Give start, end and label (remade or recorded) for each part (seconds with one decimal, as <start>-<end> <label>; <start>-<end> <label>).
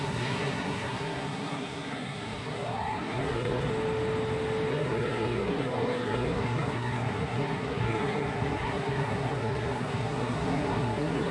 0.0-3.7 remade; 3.7-4.7 recorded; 4.7-11.3 remade